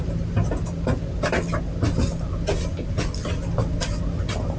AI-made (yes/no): no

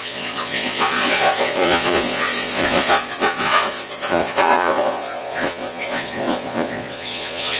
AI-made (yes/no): yes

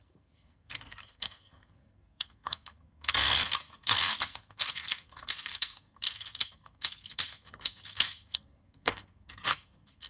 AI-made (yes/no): yes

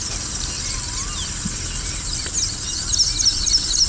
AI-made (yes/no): no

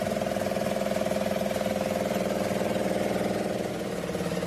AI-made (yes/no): no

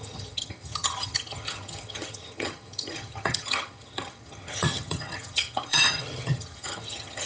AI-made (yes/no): yes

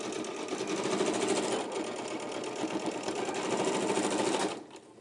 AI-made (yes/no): no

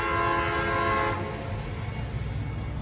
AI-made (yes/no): no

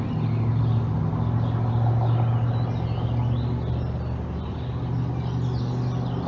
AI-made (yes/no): no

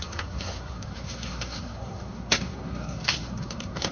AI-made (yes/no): yes